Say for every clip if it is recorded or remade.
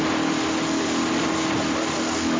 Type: recorded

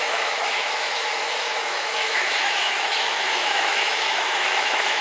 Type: remade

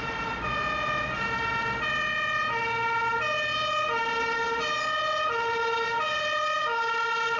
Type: recorded